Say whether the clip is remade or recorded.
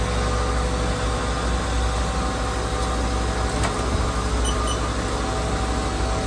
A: recorded